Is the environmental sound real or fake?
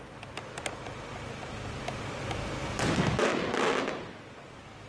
real